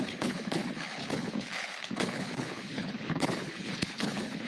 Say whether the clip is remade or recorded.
remade